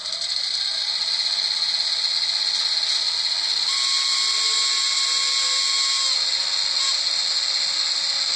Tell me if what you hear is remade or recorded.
recorded